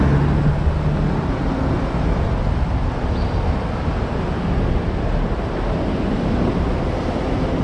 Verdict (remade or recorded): recorded